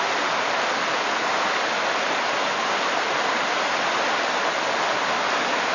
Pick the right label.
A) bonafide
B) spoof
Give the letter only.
A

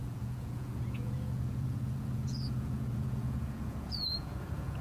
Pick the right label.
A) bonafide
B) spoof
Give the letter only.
B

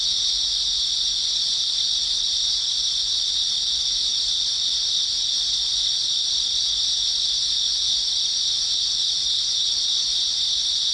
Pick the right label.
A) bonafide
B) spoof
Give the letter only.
A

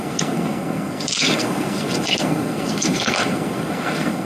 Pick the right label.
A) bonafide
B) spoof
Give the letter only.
B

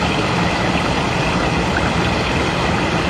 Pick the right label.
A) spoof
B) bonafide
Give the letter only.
B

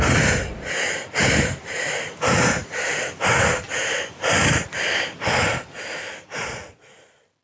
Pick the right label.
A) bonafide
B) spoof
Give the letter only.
A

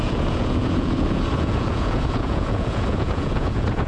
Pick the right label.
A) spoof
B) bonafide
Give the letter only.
A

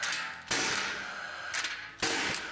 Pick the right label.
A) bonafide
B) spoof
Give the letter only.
A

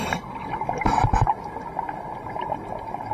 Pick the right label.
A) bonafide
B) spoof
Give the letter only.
A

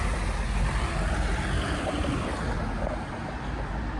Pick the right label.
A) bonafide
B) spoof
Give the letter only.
A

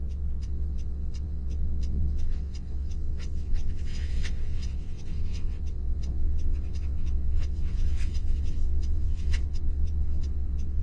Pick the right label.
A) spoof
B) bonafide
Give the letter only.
A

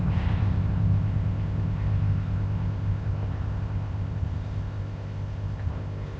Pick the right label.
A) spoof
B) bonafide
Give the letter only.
A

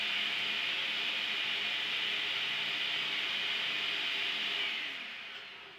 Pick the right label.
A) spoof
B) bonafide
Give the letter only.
B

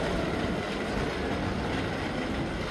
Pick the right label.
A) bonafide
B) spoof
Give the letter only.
A